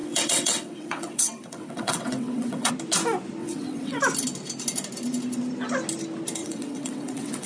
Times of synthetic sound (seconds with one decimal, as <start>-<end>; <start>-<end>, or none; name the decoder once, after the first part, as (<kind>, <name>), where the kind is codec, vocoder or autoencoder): 0.0-2.7 (vocoder, WaveNeXt); 3.4-4.0; 6.4-7.5